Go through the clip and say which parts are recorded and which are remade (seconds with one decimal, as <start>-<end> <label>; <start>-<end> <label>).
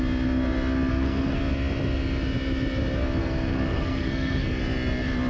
0.0-0.9 recorded; 0.9-1.4 remade; 1.4-3.2 recorded; 3.2-4.6 remade; 4.6-5.3 recorded